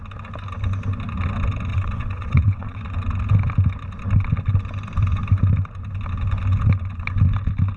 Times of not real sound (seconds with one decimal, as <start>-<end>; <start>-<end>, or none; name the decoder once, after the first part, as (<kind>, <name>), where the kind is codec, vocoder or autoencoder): 1.7-2.8 (vocoder, WaveNeXt)